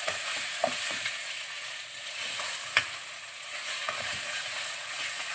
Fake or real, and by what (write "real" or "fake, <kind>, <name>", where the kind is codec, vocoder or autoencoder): fake, vocoder, Vocos